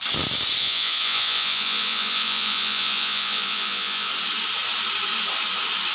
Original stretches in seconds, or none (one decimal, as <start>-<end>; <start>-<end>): 0.0-0.6; 4.1-5.9